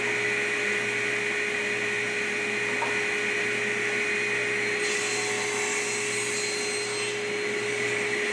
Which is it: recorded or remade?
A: recorded